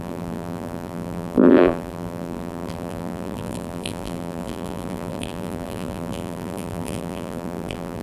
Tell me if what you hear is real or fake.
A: fake